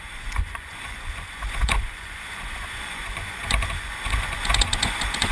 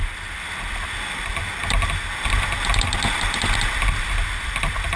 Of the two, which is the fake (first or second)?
first